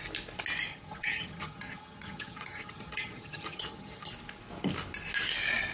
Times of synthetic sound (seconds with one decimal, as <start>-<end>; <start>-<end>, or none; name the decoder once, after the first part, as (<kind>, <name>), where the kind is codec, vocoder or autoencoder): 0.7-4.1 (vocoder, HiFi-GAN)